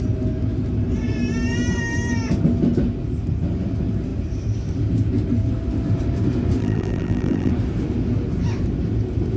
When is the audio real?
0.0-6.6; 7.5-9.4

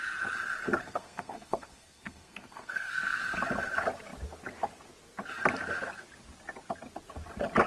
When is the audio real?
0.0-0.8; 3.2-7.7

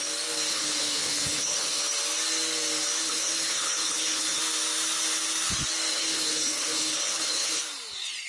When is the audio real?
0.0-0.5; 1.8-3.0; 4.4-5.9; 7.6-8.3

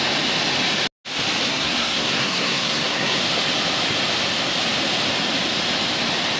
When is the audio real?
0.0-1.5; 3.2-6.4

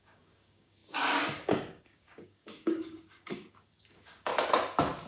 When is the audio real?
4.3-5.1

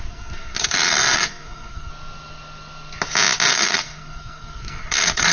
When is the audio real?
1.9-3.5